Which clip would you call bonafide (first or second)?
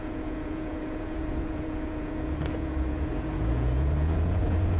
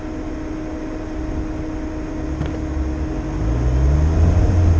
second